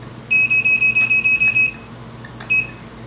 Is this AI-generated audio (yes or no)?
no